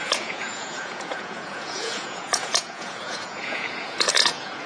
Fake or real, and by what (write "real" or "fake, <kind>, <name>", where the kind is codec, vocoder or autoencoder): fake, vocoder, Vocos